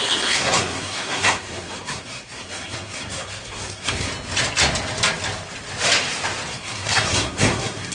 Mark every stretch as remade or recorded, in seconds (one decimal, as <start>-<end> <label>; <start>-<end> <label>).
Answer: 0.0-4.1 remade; 4.1-6.5 recorded; 6.5-7.9 remade